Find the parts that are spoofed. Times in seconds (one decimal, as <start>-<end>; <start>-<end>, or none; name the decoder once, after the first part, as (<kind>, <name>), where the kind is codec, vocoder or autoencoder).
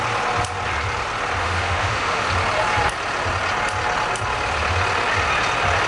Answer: 1.4-2.3 (autoencoder, DAC-VAE)